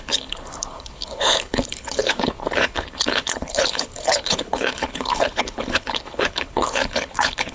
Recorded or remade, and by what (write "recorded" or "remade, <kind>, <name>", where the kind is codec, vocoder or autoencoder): remade, codec, HILCodec